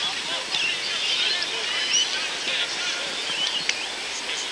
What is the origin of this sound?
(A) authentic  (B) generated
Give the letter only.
A